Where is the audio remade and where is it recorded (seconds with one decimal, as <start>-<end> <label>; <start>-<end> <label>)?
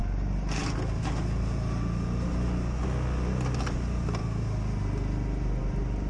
0.0-6.1 recorded